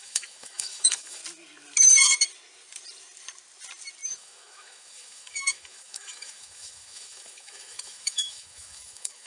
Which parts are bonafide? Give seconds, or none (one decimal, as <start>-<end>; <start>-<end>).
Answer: 1.2-4.1